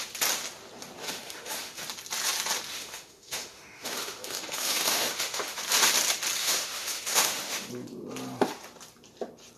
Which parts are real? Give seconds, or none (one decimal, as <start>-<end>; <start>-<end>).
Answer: 0.0-1.0; 1.8-2.7; 5.6-6.4; 7.7-9.6